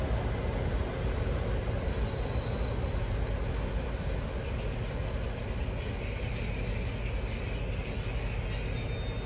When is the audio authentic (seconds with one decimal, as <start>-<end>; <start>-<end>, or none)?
0.0-0.7; 3.7-9.3